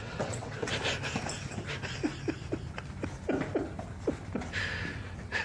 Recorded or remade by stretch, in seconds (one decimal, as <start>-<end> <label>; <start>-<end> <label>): 0.0-0.7 remade; 0.7-5.4 recorded